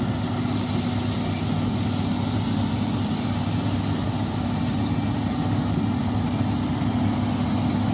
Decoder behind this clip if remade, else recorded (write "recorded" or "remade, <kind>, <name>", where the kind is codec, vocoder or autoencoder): recorded